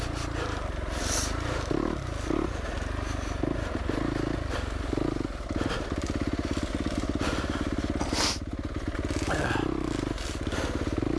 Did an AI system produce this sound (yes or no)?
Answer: no